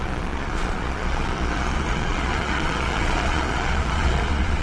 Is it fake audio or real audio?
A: fake